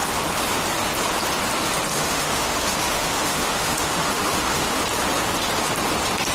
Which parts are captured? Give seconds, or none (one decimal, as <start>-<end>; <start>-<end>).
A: 0.0-1.9; 4.8-6.3